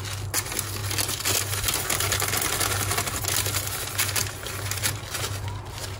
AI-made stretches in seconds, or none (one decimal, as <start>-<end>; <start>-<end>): none